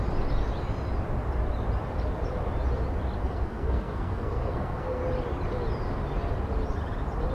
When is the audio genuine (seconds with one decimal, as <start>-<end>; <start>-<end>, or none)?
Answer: 0.0-3.2; 5.0-7.3